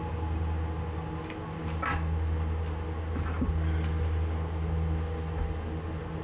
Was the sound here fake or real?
real